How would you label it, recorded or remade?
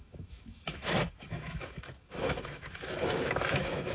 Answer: remade